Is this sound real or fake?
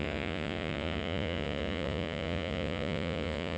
fake